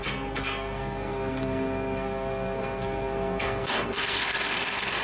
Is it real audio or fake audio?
fake